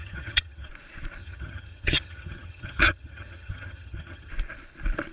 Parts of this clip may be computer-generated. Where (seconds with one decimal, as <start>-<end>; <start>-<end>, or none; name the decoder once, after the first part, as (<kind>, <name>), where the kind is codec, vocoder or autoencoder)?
0.0-0.7 (vocoder, HiFi-GAN); 1.2-4.3